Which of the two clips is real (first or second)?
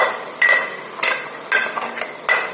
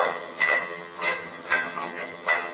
first